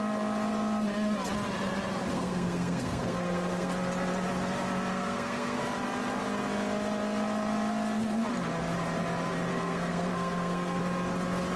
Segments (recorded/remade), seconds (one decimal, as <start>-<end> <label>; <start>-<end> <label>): 0.0-2.1 recorded; 2.1-3.7 remade; 3.7-4.9 recorded; 4.9-5.6 remade; 5.6-9.5 recorded; 9.5-10.8 remade; 10.8-11.6 recorded